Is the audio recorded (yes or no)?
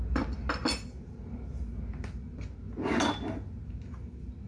yes